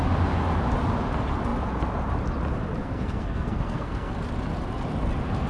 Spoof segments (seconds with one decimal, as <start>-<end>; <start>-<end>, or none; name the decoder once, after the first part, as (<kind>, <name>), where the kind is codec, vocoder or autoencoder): 2.8-4.1 (codec, SNAC)